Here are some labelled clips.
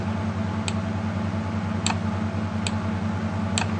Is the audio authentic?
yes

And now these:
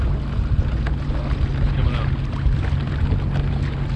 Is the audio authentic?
yes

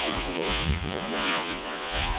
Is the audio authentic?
no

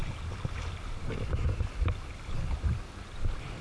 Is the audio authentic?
yes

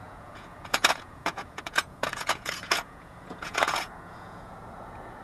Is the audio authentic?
no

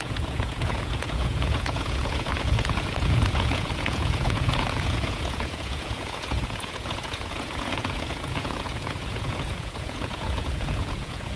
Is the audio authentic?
no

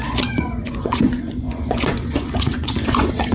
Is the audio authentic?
no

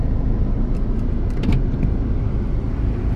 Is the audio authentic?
yes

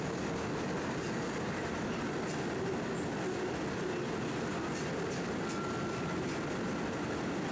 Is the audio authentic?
yes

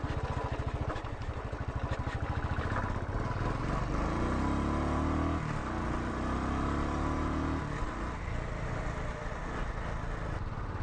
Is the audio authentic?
yes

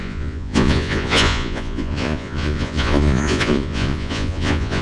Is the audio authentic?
no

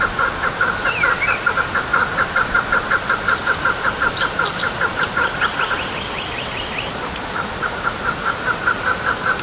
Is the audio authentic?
yes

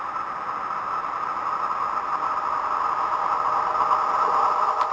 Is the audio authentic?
yes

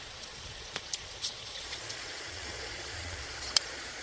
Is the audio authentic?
no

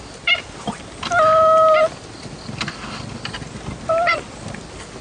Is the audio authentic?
yes